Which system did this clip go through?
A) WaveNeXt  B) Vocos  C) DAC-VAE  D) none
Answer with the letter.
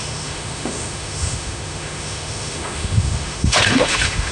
C